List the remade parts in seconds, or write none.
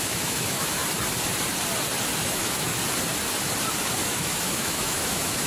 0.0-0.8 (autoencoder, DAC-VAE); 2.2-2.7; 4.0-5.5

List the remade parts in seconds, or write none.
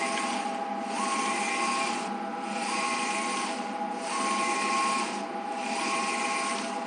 none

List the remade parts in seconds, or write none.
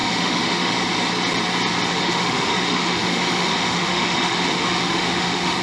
0.0-0.8 (autoencoder, DAC-VAE); 1.9-5.6